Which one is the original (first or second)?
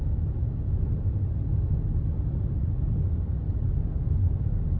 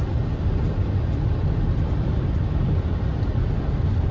first